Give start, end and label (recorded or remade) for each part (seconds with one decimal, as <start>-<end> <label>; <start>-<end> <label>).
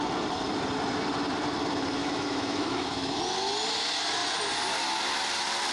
0.0-2.0 recorded; 2.0-3.2 remade; 3.2-5.7 recorded